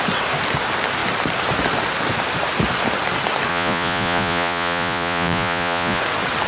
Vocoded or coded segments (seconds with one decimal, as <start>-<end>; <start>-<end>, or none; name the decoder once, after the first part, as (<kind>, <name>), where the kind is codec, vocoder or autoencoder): 3.5-6.0 (vocoder, Vocos)